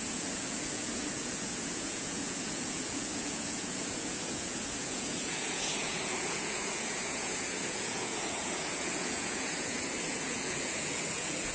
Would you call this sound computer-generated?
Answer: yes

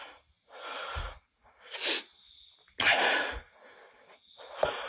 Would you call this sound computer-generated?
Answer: no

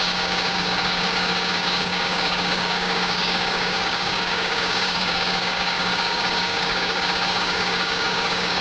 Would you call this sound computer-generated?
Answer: yes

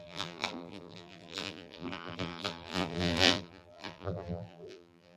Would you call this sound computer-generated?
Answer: yes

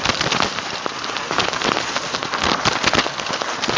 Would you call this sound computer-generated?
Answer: no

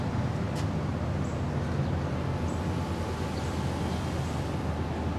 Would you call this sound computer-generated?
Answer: no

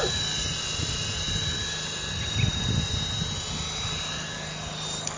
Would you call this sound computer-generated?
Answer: no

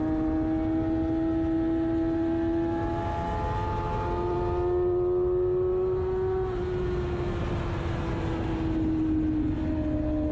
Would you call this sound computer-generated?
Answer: no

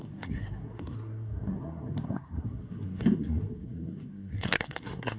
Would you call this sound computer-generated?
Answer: yes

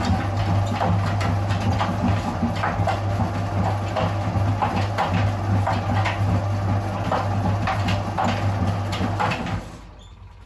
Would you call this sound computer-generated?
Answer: no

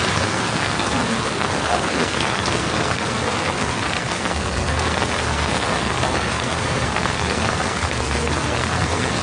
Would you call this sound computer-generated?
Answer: yes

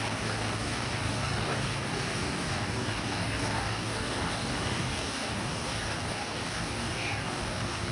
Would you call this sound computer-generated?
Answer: yes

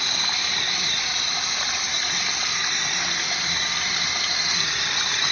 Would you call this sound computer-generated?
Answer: no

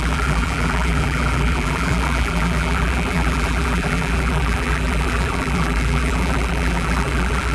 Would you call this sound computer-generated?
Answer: yes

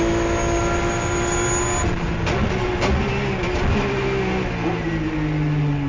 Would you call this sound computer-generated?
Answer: no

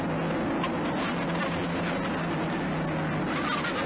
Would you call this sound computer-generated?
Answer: no